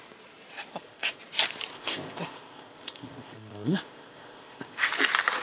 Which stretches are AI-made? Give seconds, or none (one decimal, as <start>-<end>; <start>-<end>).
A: 0.7-1.2; 1.7-4.9